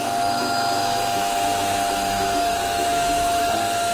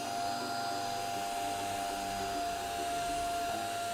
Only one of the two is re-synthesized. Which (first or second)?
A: first